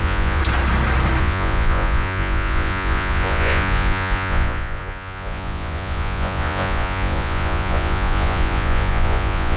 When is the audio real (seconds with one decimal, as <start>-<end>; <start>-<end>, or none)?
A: 0.4-1.2